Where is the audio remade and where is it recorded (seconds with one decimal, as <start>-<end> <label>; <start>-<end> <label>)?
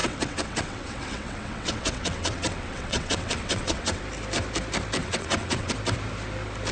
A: 0.0-4.0 remade; 4.0-5.0 recorded; 5.0-5.7 remade; 5.7-6.7 recorded